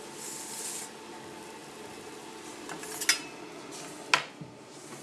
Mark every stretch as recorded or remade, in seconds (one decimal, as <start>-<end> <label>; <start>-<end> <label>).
0.0-5.0 recorded